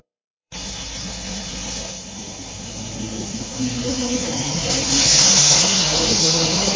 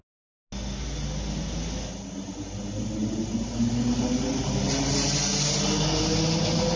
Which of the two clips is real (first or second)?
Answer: second